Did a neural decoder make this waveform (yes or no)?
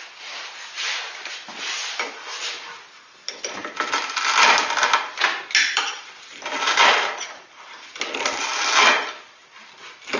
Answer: no